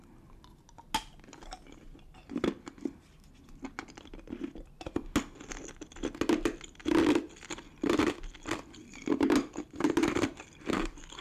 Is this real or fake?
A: real